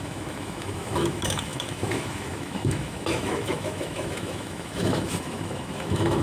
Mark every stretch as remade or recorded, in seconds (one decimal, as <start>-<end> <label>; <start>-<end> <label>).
0.0-6.2 remade